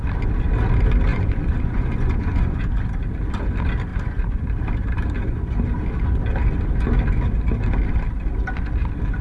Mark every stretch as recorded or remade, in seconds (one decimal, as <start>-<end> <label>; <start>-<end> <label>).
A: 0.0-1.1 recorded; 1.1-2.6 remade; 2.6-3.9 recorded; 3.9-4.4 remade; 4.4-9.2 recorded